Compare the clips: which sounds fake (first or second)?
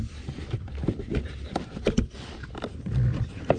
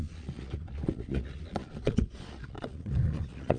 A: second